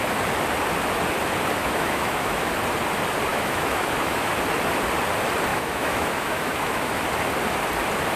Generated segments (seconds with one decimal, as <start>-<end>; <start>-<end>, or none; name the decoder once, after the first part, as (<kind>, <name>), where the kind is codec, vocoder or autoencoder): 1.6-2.5 (autoencoder, DAC-VAE); 3.3-4.3; 5.5-7.0